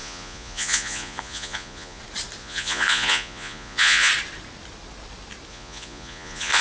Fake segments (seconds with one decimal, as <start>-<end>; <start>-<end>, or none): 0.0-2.0; 2.4-4.1; 5.5-6.6